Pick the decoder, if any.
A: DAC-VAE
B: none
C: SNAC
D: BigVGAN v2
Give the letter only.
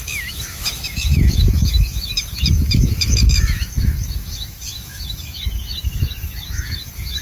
A